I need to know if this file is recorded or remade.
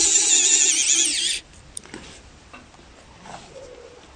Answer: recorded